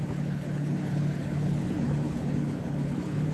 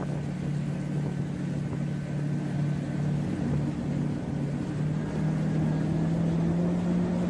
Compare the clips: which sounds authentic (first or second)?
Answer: second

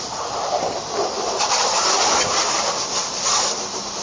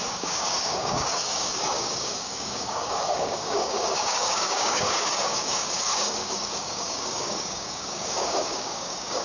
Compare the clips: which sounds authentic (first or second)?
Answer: first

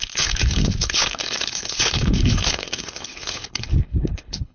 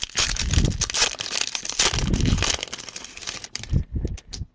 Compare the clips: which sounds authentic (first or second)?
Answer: second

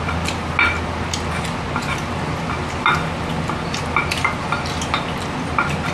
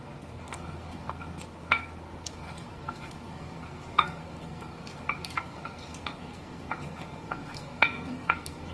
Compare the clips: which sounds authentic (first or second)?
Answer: first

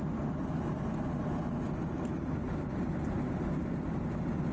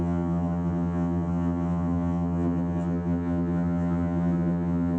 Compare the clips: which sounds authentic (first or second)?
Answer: first